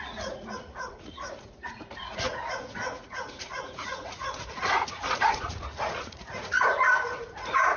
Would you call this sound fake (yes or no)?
yes